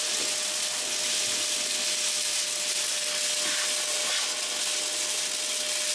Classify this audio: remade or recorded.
recorded